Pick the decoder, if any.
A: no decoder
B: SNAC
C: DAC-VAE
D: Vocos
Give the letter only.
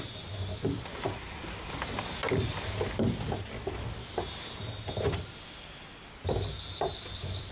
A